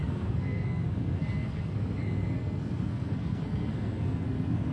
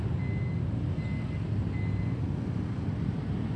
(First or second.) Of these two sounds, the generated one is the first